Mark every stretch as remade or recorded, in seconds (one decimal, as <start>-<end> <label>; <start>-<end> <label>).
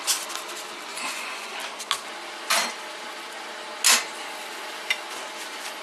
0.0-0.9 recorded; 0.9-1.5 remade; 1.5-5.8 recorded